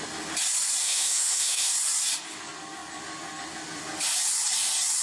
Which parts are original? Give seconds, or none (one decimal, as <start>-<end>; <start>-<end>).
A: 0.0-0.8; 1.7-5.0